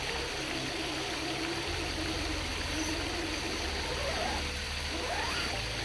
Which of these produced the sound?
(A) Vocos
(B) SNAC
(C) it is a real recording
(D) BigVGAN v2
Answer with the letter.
C